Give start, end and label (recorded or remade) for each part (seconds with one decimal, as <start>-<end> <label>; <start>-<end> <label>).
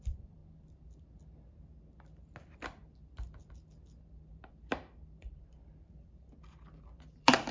0.0-0.4 remade; 0.4-4.0 recorded; 4.0-7.5 remade